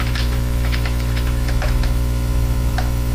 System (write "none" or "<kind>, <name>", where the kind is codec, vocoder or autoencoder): autoencoder, DAC-VAE